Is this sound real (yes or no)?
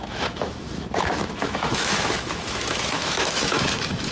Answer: no